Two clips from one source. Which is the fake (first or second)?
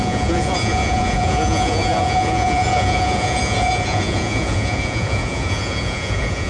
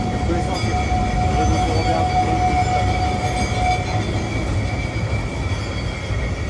first